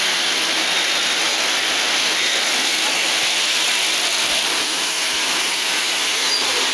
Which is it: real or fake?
real